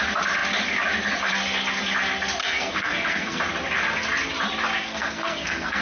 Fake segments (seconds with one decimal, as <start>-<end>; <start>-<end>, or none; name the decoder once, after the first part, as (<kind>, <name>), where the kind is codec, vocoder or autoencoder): 2.4-3.4 (codec, SNAC); 4.8-5.8